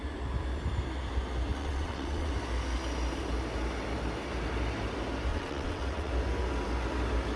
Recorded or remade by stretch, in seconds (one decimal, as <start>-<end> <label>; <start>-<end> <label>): 0.0-1.5 recorded; 1.5-2.3 remade; 2.3-5.3 recorded; 5.3-6.1 remade; 6.1-7.4 recorded